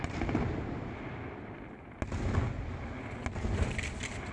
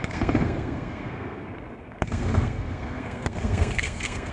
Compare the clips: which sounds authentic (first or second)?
first